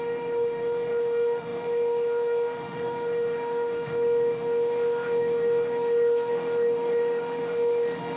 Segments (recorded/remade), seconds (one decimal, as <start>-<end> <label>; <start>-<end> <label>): 0.0-8.2 remade